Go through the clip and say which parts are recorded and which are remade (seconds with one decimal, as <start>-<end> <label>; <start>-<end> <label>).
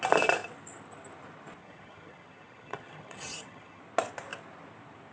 0.0-1.6 recorded; 1.6-3.8 remade; 3.8-5.1 recorded